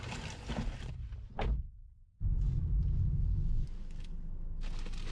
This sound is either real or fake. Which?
real